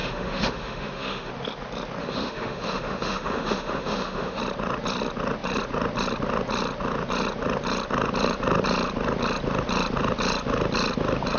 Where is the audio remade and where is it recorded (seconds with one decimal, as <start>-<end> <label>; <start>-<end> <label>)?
0.0-1.3 remade; 1.3-2.0 recorded; 2.0-4.4 remade; 4.4-11.4 recorded